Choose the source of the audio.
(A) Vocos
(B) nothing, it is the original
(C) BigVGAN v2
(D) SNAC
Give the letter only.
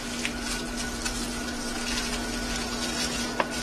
B